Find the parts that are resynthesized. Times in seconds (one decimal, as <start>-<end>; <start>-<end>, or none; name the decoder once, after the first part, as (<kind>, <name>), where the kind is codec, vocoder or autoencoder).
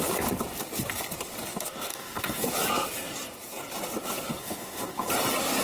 1.9-2.5 (codec, DAC); 4.4-5.1